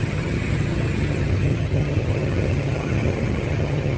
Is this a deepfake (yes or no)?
yes